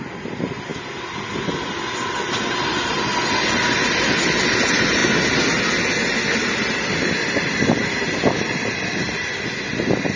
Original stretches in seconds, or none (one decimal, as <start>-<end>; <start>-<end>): 0.0-10.2